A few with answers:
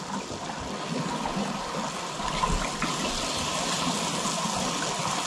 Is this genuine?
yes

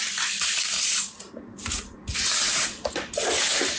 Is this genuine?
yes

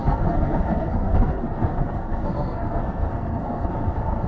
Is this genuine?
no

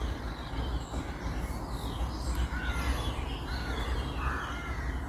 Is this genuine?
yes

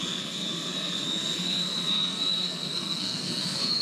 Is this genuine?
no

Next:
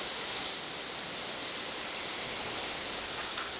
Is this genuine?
yes